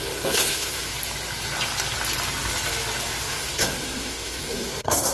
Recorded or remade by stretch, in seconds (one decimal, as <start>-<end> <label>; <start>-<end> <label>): 0.0-0.9 remade; 0.9-3.2 recorded; 3.2-5.1 remade